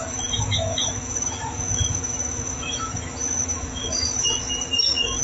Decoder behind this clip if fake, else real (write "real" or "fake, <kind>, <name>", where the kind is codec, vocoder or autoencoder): fake, autoencoder, DAC-VAE